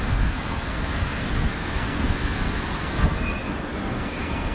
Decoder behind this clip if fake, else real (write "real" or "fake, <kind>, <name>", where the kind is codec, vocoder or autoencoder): fake, codec, SNAC